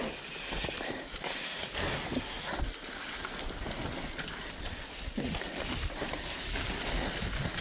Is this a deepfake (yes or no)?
no